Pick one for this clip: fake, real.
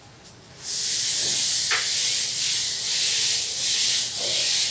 real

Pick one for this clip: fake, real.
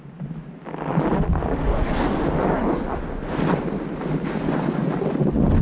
real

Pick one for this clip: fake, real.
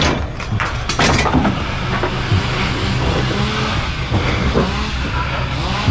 real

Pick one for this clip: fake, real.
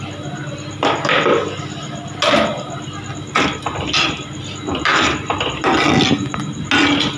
real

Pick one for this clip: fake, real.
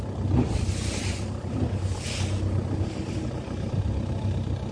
real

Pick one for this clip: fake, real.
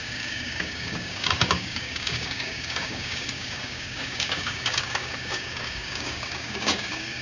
fake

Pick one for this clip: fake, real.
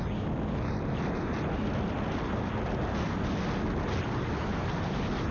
real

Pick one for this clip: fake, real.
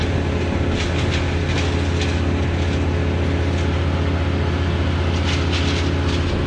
real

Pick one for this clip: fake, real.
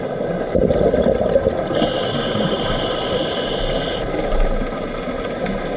real